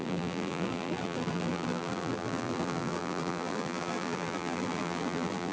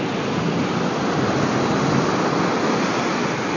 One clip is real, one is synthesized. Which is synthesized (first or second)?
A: first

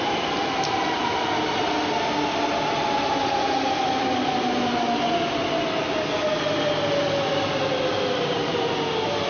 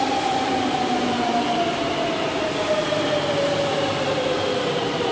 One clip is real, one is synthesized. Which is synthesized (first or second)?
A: second